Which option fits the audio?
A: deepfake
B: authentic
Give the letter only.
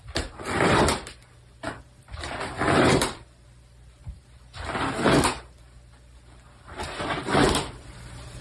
A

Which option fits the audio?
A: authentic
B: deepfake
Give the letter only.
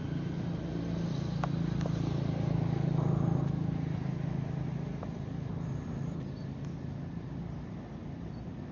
A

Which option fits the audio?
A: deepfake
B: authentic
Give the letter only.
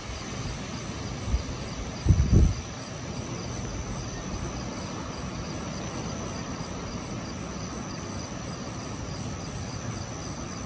B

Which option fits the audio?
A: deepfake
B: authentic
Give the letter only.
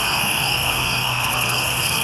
A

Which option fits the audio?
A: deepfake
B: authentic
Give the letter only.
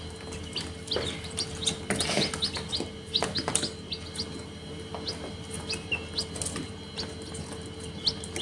B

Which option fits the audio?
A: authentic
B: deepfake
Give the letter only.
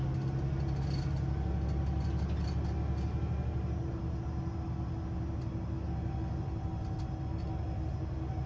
A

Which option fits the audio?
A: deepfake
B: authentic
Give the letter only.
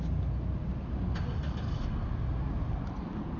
B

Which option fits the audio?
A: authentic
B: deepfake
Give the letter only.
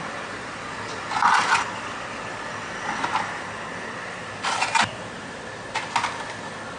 A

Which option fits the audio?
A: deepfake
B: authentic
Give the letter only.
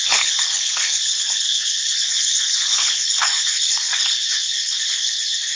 A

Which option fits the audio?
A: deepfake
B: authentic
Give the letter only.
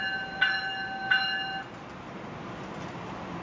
B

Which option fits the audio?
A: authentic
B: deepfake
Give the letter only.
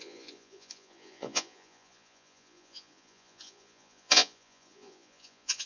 B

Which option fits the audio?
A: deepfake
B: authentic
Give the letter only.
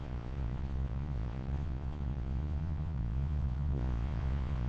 A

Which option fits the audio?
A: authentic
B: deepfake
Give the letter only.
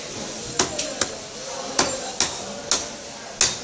A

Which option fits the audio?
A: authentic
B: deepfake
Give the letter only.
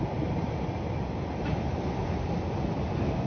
A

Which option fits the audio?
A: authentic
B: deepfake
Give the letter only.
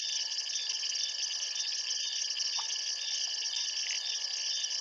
A